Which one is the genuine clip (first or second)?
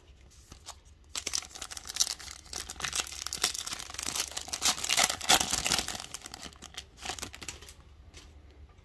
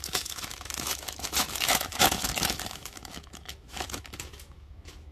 first